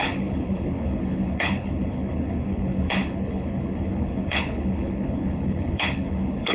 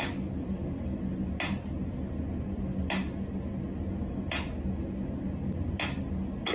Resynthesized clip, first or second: first